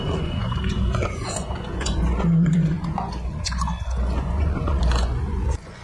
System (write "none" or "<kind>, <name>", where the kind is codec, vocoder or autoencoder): vocoder, Vocos